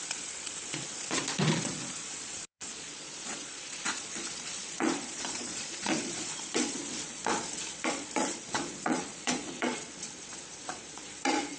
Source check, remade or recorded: remade